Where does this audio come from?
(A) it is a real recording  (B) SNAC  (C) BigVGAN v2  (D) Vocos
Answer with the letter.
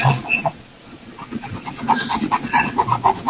D